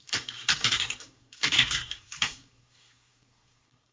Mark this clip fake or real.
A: fake